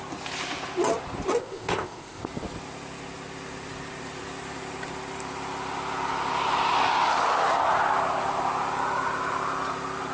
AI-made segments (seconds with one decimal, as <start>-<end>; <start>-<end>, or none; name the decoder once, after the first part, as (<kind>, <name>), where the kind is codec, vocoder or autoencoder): 1.4-2.2 (codec, ZipCodec)